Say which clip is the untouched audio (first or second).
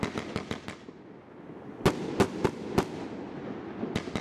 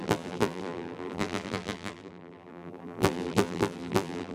first